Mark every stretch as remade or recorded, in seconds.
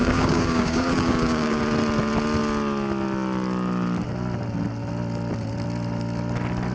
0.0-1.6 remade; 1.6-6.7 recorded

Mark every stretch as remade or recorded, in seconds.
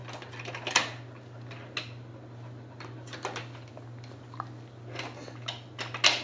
0.0-6.2 recorded